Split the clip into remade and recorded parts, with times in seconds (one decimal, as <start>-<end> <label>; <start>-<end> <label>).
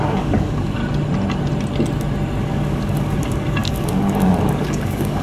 0.0-0.8 remade; 0.8-2.4 recorded; 2.4-5.2 remade